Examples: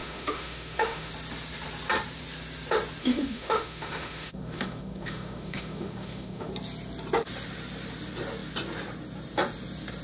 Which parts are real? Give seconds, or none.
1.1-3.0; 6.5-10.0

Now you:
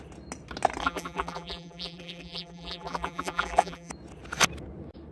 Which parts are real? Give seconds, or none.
0.0-0.8; 3.9-5.1

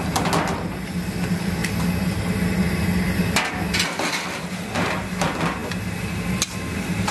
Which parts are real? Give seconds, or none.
0.0-7.1

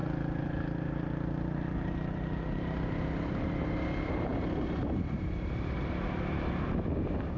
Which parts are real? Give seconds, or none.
0.0-7.4

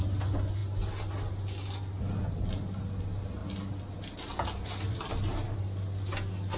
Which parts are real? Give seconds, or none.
0.0-6.6

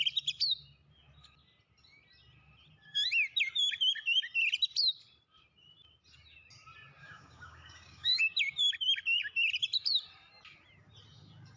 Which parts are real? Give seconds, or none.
0.0-7.0; 8.2-11.6

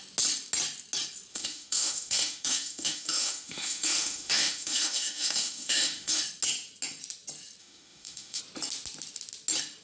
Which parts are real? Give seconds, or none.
0.0-1.3; 6.2-7.6; 8.4-9.8